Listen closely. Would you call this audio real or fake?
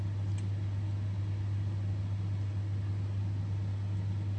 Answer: real